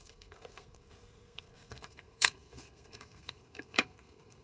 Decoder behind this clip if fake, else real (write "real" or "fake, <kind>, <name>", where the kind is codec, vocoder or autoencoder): fake, codec, SNAC